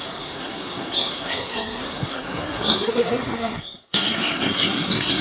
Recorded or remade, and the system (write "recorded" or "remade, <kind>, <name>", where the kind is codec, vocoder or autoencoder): remade, codec, SNAC